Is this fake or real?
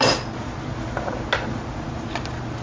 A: real